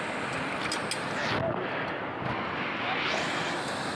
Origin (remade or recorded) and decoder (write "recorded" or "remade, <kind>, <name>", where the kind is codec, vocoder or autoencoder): recorded